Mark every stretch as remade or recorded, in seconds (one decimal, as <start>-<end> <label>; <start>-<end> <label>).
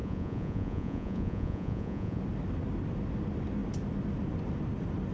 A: 0.0-2.2 remade; 2.2-5.1 recorded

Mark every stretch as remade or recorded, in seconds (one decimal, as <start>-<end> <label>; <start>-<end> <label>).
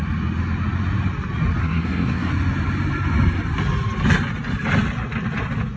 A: 0.0-1.6 recorded; 1.6-2.3 remade; 2.3-5.8 recorded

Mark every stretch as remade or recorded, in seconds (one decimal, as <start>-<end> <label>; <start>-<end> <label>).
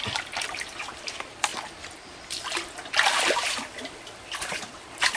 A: 0.0-1.5 remade; 1.5-2.9 recorded; 2.9-5.2 remade